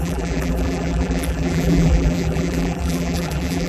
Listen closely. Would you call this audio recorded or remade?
remade